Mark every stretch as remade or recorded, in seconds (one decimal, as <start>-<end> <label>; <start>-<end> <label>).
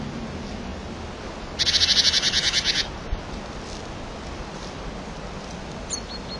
0.0-6.4 recorded